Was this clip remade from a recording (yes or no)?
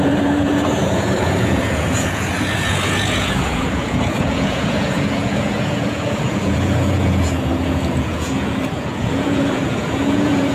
yes